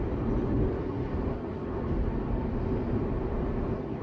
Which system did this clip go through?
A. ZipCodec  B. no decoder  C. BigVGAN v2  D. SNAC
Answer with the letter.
B